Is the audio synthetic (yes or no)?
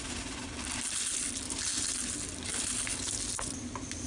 no